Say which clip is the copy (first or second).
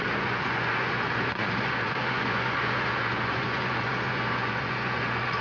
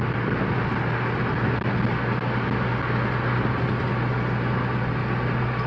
first